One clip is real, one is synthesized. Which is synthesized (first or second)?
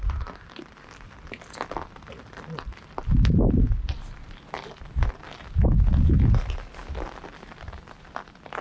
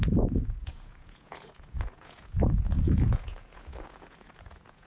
second